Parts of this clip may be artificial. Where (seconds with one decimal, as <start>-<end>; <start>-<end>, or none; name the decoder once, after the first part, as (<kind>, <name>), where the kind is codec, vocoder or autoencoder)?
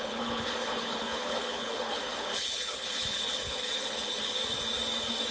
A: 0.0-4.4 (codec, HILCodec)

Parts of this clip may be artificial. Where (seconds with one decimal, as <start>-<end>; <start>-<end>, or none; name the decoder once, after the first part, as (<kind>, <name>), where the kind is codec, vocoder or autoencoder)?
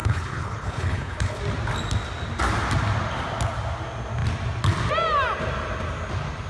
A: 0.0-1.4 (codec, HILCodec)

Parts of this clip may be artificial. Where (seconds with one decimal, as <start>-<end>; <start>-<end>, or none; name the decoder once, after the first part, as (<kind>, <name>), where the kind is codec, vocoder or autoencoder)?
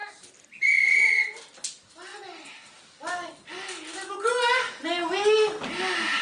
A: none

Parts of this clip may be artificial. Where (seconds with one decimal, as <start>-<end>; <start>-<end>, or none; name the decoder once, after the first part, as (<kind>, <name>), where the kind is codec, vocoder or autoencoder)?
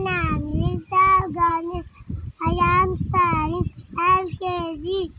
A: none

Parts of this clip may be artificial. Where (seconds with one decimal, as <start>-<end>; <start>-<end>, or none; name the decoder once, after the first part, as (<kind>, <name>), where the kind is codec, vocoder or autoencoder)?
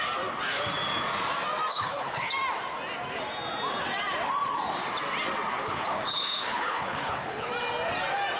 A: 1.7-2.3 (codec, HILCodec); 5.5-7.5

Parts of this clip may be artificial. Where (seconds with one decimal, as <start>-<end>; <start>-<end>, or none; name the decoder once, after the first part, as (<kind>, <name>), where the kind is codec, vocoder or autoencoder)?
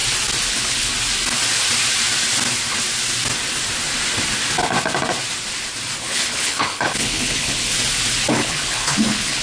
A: 0.5-0.9 (codec, HILCodec); 6.0-7.7; 8.3-9.4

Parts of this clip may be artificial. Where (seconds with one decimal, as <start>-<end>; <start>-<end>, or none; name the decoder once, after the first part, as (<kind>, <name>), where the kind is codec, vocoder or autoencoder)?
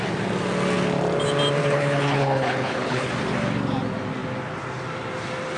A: 1.6-3.1 (codec, HILCodec)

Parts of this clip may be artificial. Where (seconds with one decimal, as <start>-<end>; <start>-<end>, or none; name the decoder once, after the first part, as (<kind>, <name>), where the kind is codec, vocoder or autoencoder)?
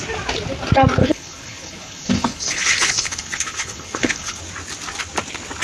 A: 1.0-4.4 (codec, HILCodec)